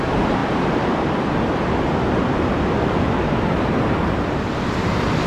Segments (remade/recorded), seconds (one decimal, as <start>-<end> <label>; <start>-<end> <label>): 0.0-5.3 recorded